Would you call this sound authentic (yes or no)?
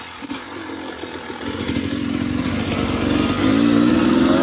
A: yes